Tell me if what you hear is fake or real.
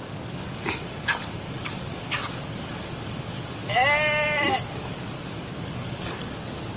fake